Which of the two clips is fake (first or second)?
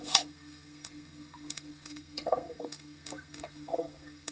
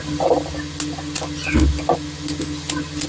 first